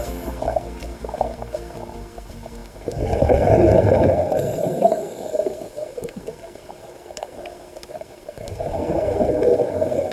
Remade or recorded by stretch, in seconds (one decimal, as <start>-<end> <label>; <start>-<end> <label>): 0.0-10.1 remade